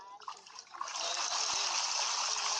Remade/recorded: recorded